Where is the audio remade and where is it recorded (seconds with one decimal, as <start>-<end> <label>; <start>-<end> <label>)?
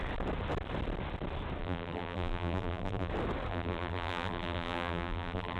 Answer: 0.0-1.6 recorded; 1.6-3.1 remade; 3.1-3.5 recorded; 3.5-5.6 remade